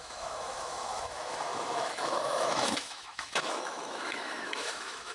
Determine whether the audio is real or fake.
fake